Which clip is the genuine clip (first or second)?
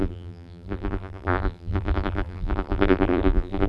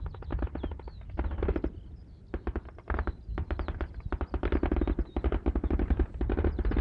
second